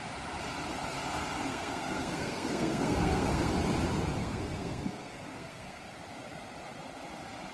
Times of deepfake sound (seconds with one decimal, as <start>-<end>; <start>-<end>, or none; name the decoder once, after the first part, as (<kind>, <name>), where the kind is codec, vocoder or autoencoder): 1.5-3.5 (codec, SNAC); 4.2-5.8